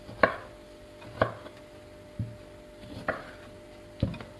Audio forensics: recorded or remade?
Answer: recorded